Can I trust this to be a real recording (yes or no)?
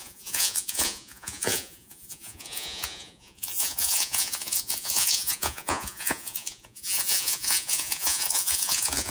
no